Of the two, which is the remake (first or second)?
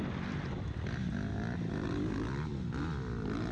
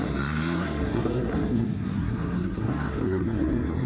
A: second